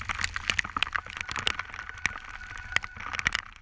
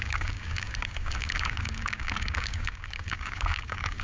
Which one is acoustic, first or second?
first